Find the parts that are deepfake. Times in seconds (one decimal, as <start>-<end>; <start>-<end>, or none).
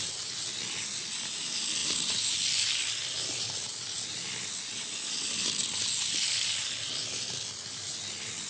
none